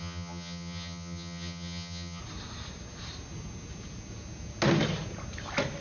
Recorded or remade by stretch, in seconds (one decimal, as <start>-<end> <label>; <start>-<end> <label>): 0.0-2.2 remade; 2.2-5.8 recorded